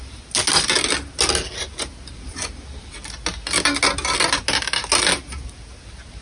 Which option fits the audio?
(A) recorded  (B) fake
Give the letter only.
A